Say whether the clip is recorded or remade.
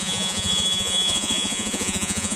remade